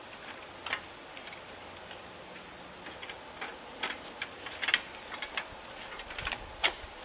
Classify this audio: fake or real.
real